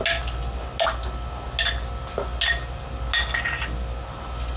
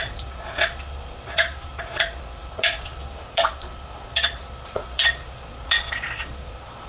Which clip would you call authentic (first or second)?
first